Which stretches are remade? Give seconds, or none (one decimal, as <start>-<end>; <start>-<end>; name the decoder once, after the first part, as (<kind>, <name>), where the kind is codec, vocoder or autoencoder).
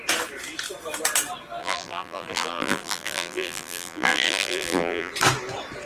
1.6-5.1 (vocoder, BigVGAN v2)